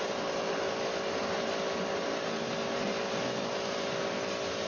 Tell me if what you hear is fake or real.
real